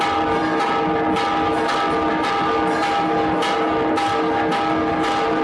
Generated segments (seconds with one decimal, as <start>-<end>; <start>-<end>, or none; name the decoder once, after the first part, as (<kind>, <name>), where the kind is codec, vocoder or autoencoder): none

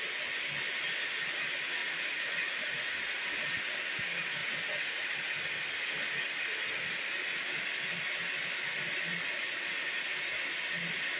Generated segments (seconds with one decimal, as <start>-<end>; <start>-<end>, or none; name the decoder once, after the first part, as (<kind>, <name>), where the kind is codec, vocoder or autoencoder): 1.8-3.3 (vocoder, Vocos); 9.1-9.7

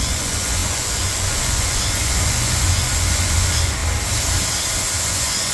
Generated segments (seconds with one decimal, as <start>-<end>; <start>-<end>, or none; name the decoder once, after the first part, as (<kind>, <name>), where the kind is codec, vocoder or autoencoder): 0.0-3.8 (vocoder, Vocos); 5.0-5.5

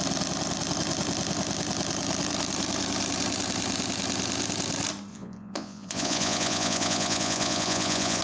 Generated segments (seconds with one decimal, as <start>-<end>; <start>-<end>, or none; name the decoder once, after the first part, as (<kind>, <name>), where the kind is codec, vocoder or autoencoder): 5.1-8.2 (vocoder, Vocos)